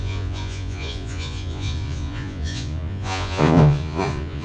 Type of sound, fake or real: fake